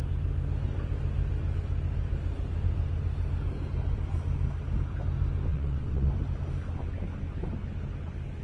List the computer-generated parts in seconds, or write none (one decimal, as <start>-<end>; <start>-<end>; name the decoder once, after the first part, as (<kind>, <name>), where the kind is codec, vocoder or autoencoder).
5.5-6.1 (vocoder, WaveNeXt)